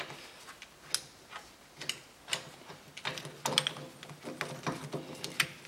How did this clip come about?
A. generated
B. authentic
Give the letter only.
B